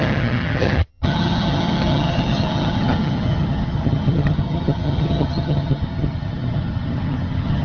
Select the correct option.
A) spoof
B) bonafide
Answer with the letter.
A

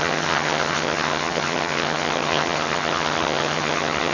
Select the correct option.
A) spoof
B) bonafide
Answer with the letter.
A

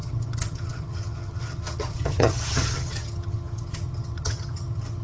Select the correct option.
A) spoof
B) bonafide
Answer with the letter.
A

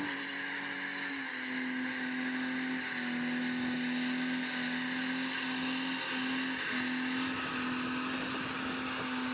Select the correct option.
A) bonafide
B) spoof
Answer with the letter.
A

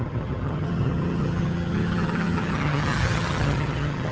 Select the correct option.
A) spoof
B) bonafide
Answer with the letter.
A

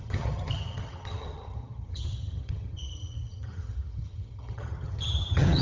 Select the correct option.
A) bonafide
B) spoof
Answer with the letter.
B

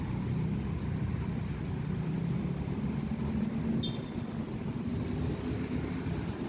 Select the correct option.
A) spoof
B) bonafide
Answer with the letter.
B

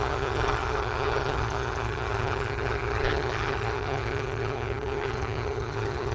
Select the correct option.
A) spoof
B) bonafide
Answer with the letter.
A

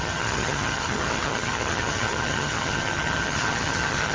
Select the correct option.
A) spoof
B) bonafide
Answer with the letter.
A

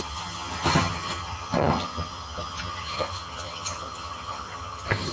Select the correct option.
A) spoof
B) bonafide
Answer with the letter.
A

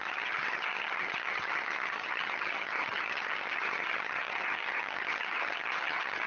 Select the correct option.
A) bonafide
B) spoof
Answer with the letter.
B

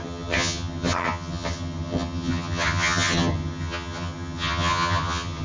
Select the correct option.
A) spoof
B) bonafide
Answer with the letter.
A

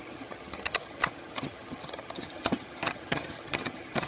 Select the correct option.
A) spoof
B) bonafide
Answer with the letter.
A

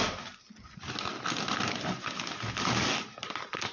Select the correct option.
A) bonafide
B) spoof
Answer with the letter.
A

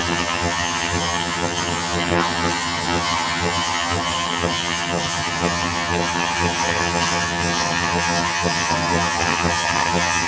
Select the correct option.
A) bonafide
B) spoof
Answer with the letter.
B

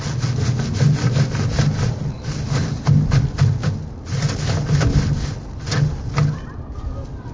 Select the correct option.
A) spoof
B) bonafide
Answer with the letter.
B